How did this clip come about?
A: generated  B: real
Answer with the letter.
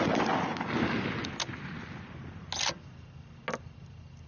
B